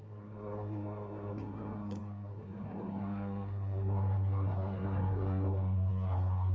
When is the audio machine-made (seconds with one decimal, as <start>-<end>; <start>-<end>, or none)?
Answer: 0.0-6.5